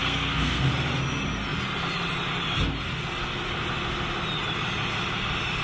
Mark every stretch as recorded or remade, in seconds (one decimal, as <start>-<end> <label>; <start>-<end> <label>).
0.0-0.7 remade; 0.7-5.6 recorded